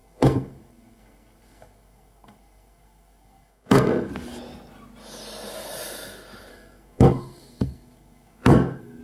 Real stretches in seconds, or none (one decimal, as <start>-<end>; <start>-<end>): 4.1-6.5